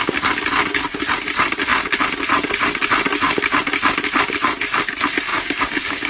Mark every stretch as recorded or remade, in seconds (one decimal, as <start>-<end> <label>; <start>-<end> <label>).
0.0-5.3 recorded; 5.3-6.1 remade